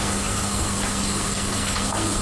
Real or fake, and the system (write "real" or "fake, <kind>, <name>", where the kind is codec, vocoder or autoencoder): fake, codec, SNAC